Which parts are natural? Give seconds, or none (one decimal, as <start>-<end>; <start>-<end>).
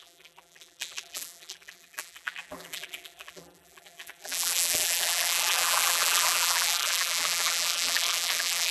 none